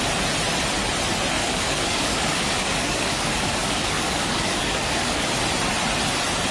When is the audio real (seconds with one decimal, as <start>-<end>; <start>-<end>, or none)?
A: 0.0-1.4; 5.3-6.5